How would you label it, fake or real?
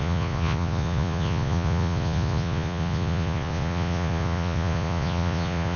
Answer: fake